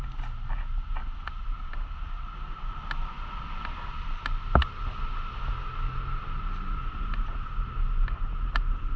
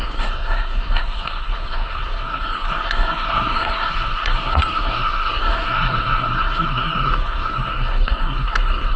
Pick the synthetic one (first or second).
second